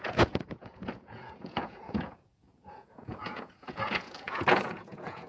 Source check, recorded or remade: remade